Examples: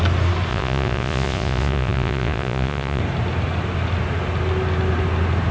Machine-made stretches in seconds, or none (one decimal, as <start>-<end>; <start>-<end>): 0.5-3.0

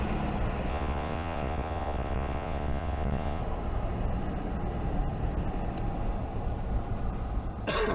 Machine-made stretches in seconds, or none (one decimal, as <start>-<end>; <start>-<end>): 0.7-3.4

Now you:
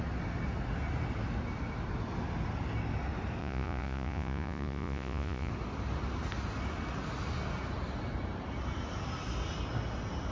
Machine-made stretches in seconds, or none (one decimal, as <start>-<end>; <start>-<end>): 3.4-5.5

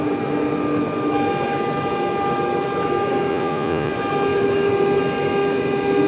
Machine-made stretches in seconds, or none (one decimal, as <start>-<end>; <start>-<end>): 3.3-3.9